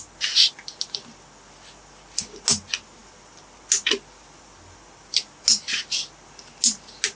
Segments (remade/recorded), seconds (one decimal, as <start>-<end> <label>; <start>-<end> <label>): 0.0-7.2 recorded